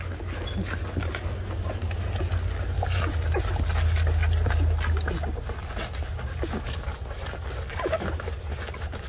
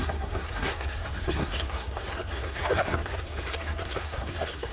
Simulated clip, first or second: second